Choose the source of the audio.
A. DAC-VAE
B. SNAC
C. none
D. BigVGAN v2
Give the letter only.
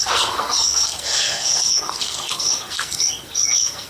B